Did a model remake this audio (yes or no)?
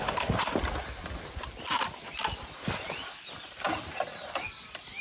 no